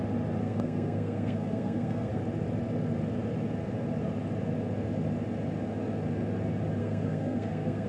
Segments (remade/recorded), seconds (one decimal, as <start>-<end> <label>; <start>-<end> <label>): 0.0-0.4 recorded; 0.4-2.2 remade; 2.2-6.8 recorded; 6.8-7.9 remade

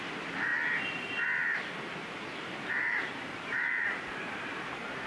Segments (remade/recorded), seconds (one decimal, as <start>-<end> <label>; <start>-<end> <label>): 0.0-0.5 remade; 0.5-2.7 recorded; 2.7-5.1 remade

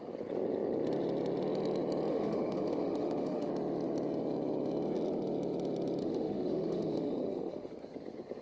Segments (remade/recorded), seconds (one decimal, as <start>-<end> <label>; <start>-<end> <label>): 0.0-2.1 recorded; 2.1-3.5 remade; 3.5-6.0 recorded; 6.0-7.7 remade; 7.7-8.4 recorded

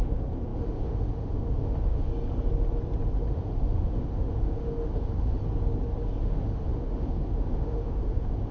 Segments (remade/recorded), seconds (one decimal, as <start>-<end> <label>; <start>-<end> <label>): 0.0-2.1 remade; 2.1-3.3 recorded; 3.3-5.4 remade; 5.4-6.2 recorded; 6.2-8.5 remade